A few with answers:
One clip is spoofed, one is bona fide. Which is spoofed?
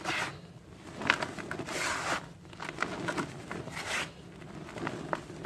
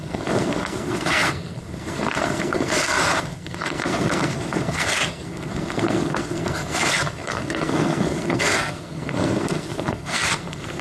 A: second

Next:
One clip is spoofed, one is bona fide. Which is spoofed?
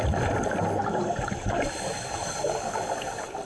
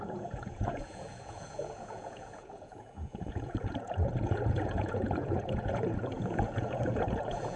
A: second